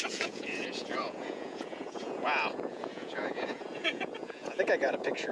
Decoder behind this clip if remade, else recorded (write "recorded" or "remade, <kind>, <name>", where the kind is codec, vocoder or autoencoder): remade, vocoder, Vocos